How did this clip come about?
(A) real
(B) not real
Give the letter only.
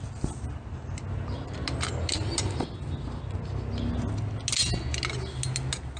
A